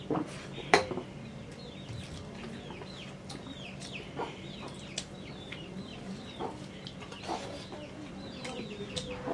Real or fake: fake